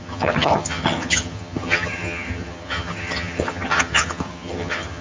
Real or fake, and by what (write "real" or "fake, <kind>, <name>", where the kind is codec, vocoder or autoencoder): fake, vocoder, HiFi-GAN